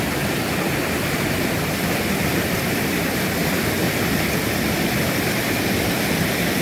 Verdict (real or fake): fake